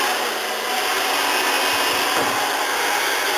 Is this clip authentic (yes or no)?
yes